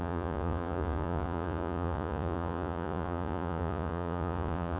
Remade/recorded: remade